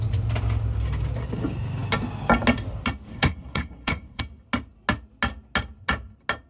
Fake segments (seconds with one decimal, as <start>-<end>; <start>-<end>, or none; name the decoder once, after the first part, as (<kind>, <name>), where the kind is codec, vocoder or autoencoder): 3.1-4.2 (codec, SNAC)